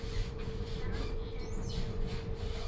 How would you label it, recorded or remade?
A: remade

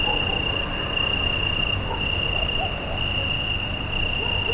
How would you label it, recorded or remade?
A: recorded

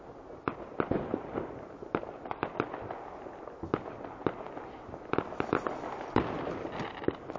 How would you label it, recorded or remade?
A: recorded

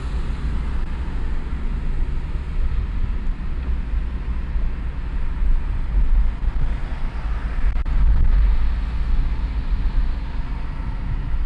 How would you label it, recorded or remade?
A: recorded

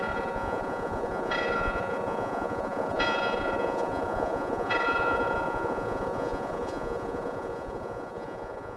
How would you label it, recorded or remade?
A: remade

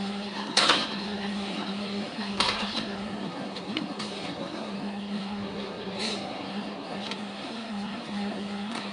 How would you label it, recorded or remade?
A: remade